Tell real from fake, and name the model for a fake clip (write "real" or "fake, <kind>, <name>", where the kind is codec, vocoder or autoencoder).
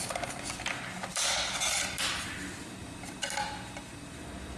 real